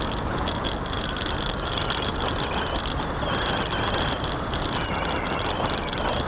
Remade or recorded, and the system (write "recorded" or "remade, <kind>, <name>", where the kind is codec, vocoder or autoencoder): recorded